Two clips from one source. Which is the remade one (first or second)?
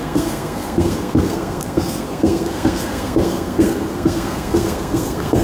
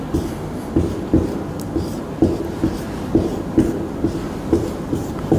first